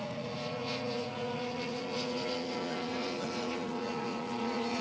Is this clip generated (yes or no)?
yes